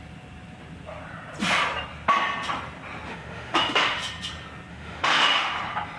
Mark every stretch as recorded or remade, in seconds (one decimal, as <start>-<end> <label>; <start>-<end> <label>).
0.0-3.1 recorded; 3.1-4.0 remade; 4.0-4.7 recorded; 4.7-5.5 remade; 5.5-6.0 recorded